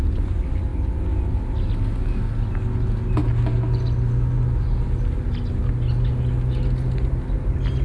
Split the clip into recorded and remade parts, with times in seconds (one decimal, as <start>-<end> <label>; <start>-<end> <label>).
0.0-7.8 recorded